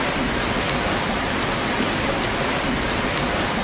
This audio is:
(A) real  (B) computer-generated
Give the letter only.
A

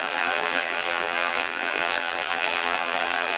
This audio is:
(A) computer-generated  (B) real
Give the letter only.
A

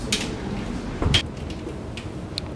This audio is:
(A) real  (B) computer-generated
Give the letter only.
A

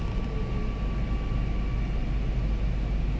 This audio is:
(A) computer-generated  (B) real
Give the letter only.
B